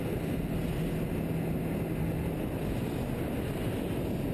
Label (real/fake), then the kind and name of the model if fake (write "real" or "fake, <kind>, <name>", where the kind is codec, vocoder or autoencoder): real